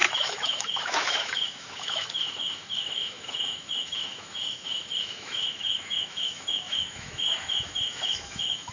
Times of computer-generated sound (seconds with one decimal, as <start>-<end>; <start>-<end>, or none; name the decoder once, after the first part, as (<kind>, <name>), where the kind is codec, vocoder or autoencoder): 0.0-8.7 (autoencoder, DAC-VAE)